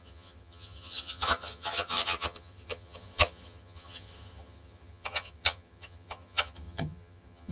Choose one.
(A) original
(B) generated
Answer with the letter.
B